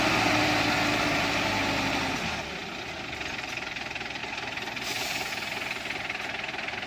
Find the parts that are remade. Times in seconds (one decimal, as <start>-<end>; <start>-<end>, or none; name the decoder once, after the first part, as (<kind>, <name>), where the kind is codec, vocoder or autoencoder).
none

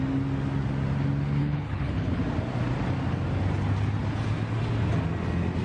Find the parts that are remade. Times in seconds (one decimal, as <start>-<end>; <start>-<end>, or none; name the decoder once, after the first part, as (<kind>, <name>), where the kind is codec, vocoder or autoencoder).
1.4-2.2 (codec, HILCodec)

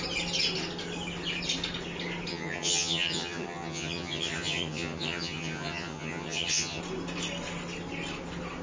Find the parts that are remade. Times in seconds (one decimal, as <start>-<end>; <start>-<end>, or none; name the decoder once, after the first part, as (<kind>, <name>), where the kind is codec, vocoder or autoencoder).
2.3-6.8 (vocoder, HiFi-GAN)

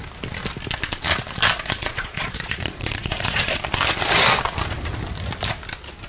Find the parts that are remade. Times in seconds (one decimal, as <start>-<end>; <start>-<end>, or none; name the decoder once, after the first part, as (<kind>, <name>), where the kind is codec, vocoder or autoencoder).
1.8-3.6 (vocoder, Vocos)

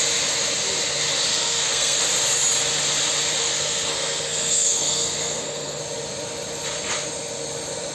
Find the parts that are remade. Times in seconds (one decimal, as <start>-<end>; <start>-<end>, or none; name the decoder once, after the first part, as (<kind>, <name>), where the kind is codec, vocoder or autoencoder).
1.3-2.0 (codec, SNAC); 3.4-5.8